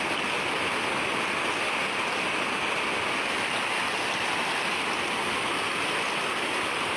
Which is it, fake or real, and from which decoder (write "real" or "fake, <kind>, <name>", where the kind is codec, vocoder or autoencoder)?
real